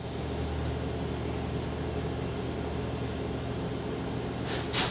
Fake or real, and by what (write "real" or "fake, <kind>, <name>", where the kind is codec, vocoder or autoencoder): real